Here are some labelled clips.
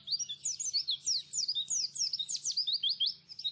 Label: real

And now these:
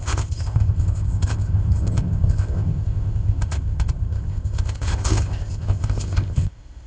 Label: fake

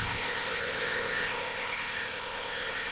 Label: fake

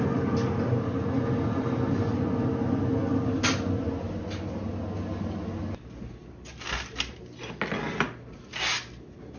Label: real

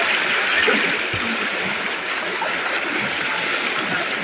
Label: real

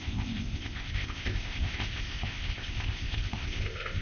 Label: fake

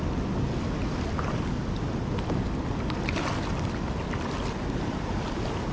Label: real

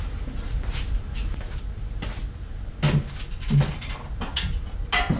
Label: real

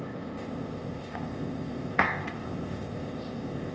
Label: fake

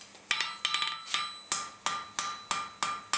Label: real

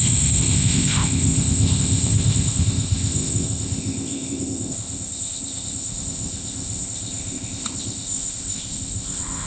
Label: fake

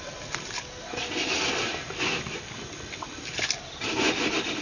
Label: real